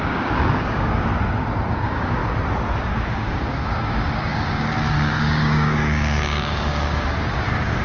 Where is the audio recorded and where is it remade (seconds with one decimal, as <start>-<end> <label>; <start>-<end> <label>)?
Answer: 0.0-1.1 remade; 1.1-1.7 recorded; 1.7-2.2 remade; 2.2-2.8 recorded; 2.8-7.8 remade